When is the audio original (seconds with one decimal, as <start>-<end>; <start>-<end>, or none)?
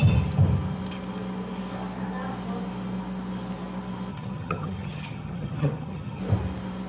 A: 0.0-4.1; 6.2-6.9